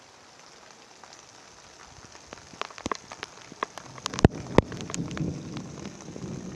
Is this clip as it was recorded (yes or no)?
yes